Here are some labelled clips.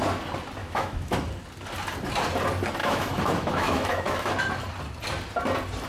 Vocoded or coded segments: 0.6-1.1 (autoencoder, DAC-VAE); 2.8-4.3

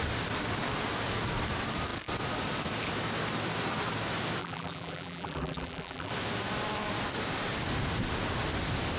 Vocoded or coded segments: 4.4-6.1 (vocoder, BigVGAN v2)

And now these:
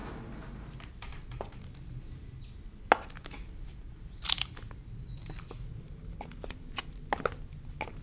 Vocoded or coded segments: none